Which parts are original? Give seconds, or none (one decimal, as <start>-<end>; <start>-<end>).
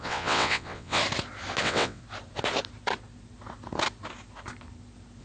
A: 1.0-1.6; 2.0-5.2